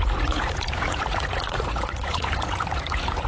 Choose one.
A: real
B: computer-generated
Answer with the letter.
B